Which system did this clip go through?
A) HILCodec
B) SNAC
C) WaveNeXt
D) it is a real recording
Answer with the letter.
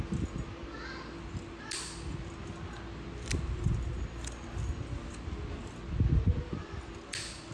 D